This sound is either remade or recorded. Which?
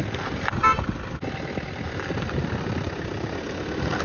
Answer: recorded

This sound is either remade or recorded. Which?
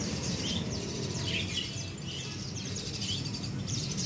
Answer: remade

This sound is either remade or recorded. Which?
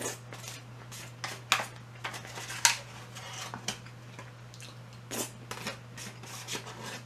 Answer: recorded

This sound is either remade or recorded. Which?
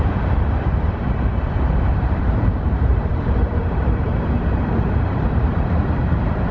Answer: remade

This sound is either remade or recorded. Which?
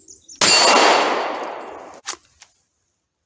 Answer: recorded